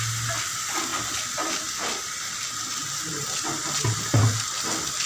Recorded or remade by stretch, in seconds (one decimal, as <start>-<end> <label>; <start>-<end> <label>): 0.0-5.1 recorded